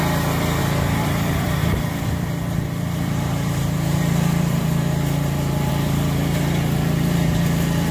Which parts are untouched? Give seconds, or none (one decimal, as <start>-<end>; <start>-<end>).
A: none